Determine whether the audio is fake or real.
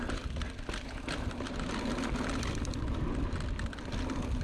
real